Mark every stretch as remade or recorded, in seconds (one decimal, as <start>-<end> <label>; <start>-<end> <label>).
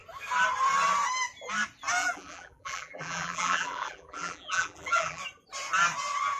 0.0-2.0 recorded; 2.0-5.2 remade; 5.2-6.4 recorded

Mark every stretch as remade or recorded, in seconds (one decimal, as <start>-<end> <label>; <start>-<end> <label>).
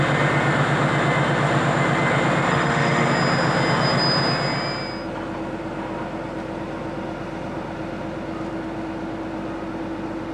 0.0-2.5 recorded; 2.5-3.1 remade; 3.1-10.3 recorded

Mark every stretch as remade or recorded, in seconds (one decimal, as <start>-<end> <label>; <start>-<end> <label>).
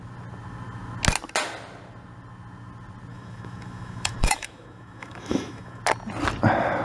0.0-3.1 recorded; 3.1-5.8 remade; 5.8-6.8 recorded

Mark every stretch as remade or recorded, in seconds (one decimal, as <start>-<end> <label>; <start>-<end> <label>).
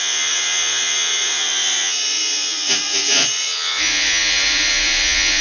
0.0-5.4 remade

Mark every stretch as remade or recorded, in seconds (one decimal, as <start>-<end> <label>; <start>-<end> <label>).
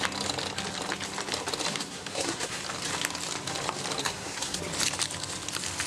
0.0-1.7 recorded; 1.7-2.6 remade; 2.6-4.0 recorded; 4.0-4.6 remade; 4.6-5.9 recorded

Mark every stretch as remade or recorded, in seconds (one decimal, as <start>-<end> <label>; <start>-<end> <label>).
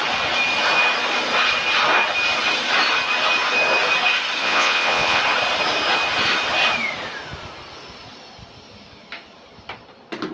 0.0-4.4 recorded; 4.4-5.2 remade; 5.2-10.3 recorded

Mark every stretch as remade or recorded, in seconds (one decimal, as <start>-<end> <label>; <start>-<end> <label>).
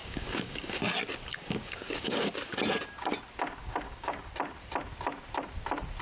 0.0-0.8 remade; 0.8-1.3 recorded; 1.3-2.3 remade; 2.3-3.6 recorded; 3.6-4.3 remade; 4.3-6.0 recorded